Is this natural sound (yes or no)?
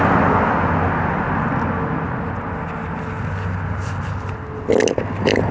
yes